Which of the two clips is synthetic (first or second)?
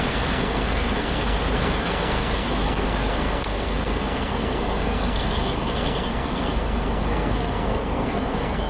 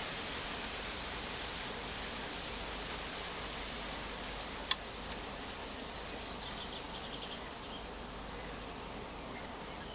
first